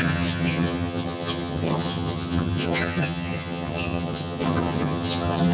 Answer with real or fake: fake